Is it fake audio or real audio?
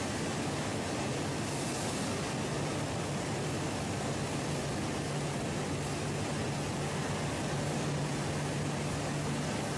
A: real